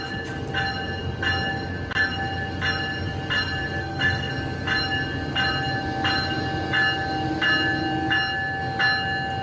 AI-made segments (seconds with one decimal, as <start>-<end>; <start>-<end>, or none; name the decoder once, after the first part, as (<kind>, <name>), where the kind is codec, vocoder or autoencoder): 3.8-4.3 (codec, SNAC)